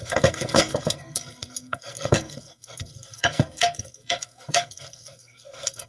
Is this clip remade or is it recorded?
remade